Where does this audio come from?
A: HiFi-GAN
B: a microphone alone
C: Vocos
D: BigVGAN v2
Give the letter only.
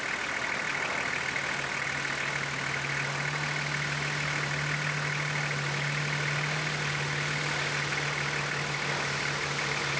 B